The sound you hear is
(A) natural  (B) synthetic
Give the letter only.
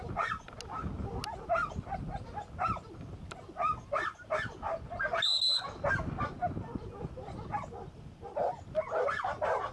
A